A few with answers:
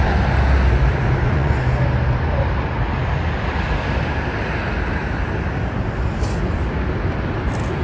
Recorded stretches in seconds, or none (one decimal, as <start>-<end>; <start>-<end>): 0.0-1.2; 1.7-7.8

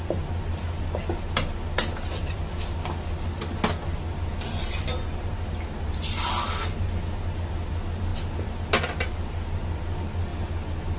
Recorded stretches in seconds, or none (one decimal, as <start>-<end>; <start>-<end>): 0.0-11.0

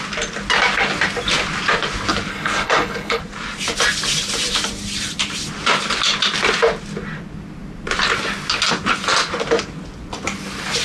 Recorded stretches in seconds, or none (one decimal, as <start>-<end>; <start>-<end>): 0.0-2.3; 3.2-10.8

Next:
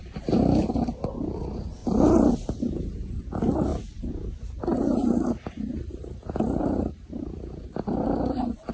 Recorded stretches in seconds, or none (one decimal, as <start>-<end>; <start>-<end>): 1.8-2.3